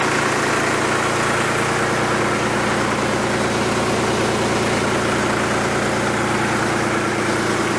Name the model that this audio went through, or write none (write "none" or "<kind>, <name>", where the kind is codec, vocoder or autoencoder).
none